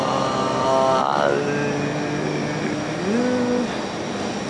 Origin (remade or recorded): recorded